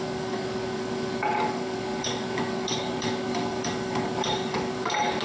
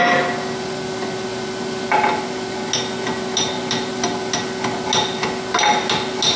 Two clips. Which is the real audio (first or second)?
second